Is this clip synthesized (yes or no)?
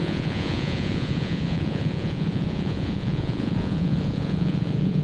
yes